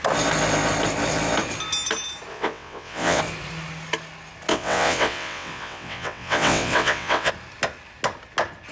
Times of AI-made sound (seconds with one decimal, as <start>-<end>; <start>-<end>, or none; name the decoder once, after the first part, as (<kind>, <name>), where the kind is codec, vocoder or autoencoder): 2.3-3.2 (vocoder, WaveNeXt); 4.5-7.3